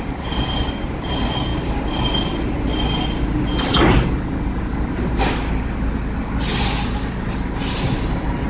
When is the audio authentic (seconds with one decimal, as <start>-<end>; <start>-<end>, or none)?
0.0-7.6